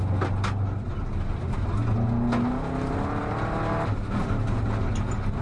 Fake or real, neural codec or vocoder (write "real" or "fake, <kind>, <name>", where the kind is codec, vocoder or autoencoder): real